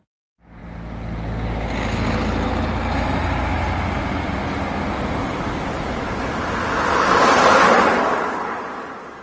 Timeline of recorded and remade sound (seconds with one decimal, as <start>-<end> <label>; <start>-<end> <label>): 0.0-9.2 recorded